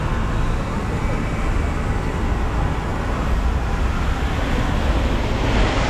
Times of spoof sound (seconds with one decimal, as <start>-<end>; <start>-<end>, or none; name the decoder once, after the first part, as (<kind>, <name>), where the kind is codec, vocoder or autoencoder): none